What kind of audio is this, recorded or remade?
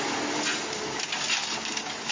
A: recorded